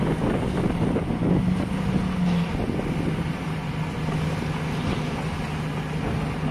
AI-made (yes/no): no